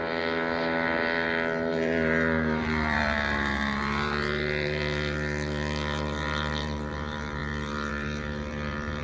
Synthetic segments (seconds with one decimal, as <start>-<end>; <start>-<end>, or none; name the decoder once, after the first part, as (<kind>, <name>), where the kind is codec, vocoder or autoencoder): 0.0-9.0 (vocoder, BigVGAN v2)